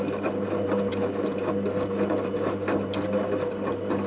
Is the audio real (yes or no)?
yes